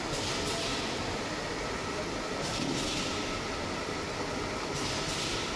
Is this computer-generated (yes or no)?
yes